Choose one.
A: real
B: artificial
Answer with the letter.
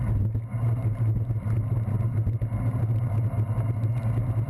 A